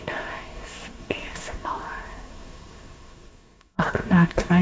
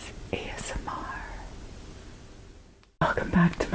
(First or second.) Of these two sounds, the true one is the second